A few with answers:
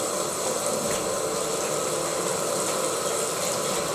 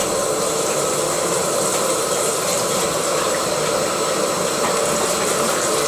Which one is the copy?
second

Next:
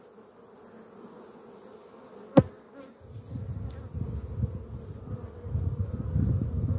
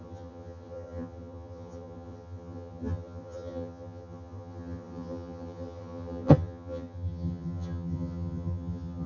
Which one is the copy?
second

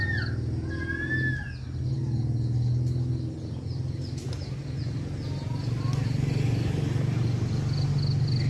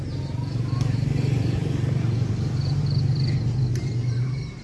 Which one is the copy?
second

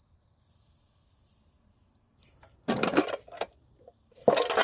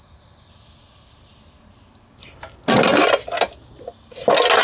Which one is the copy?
first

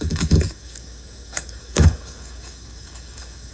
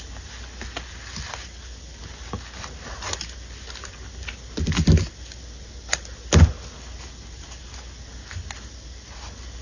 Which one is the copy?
first